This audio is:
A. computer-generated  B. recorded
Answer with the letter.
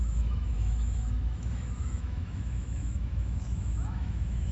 A